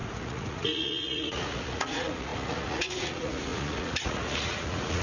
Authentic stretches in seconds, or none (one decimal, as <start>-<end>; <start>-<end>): none